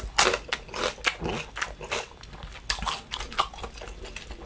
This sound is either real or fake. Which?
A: real